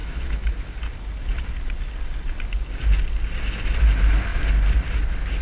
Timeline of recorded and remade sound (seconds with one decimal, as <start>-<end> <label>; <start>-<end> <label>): 0.0-0.5 remade; 0.5-5.4 recorded